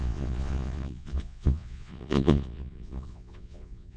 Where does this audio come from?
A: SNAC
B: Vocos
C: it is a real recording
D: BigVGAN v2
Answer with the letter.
B